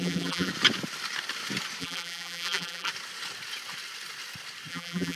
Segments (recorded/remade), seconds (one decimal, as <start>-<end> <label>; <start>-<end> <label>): 0.0-0.5 remade; 0.5-1.8 recorded; 1.8-2.9 remade; 2.9-4.7 recorded; 4.7-5.2 remade